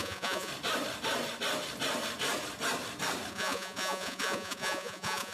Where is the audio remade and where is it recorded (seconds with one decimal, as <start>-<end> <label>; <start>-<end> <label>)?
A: 0.0-0.5 remade; 0.5-3.3 recorded; 3.3-5.3 remade